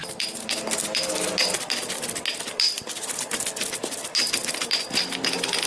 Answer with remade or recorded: recorded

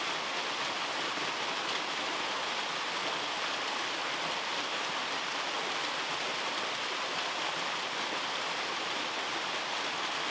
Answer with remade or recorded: recorded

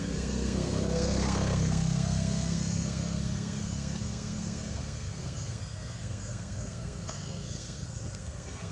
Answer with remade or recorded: remade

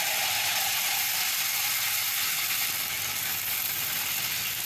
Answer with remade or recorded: recorded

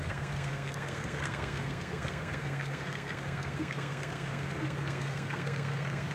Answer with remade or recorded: remade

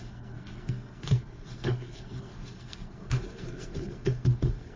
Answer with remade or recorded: remade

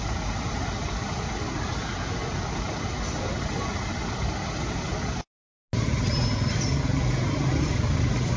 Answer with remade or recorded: recorded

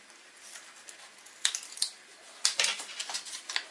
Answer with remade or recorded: recorded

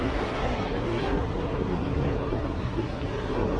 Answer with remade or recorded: remade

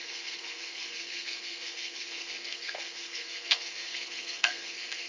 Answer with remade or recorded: remade